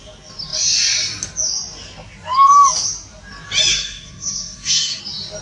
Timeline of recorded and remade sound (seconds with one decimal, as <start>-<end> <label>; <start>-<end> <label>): 0.0-3.7 recorded; 3.7-5.0 remade; 5.0-5.4 recorded